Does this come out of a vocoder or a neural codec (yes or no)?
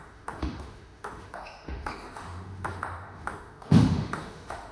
yes